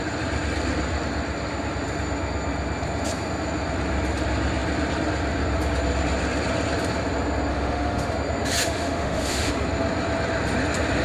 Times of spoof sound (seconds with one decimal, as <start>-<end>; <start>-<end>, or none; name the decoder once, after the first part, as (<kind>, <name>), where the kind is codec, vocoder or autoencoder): 7.5-8.1 (autoencoder, DAC-VAE); 8.6-9.5